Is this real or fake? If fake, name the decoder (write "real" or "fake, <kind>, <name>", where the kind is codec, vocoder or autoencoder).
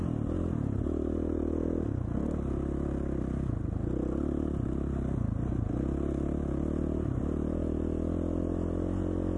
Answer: real